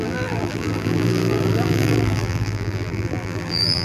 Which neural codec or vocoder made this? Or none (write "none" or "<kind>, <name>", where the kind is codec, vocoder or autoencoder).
vocoder, BigVGAN v2